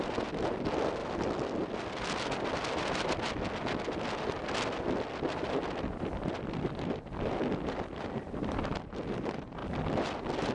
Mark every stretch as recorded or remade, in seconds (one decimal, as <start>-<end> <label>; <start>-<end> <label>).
0.0-10.5 recorded